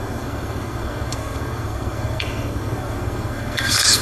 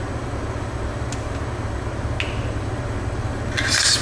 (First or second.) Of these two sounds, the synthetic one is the first